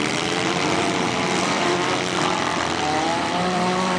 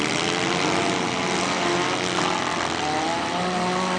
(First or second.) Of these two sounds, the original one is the second